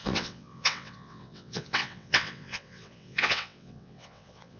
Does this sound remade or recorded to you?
remade